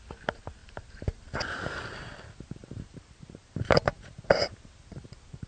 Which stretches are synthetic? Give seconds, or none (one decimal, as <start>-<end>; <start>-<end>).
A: 0.6-1.3; 2.6-5.5